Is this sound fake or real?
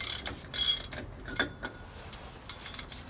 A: real